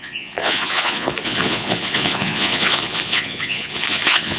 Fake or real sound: fake